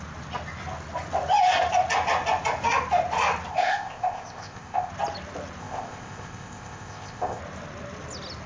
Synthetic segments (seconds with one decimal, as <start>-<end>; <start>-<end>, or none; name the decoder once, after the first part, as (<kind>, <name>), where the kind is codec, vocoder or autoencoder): 3.5-4.9 (codec, ZipCodec); 5.6-7.4